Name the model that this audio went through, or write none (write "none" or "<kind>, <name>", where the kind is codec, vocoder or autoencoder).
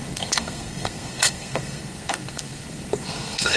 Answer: codec, SNAC